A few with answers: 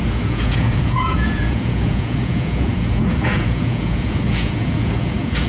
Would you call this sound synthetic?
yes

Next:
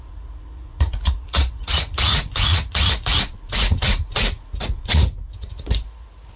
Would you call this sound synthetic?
yes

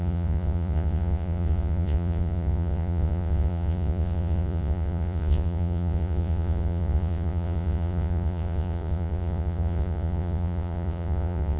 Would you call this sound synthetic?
yes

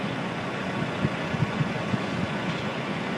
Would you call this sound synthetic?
yes